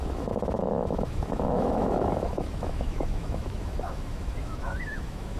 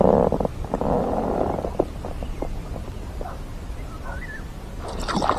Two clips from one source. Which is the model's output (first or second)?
first